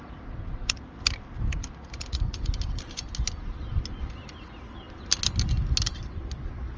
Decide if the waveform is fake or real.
real